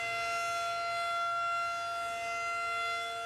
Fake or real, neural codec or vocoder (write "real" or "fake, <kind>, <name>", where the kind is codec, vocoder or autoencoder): real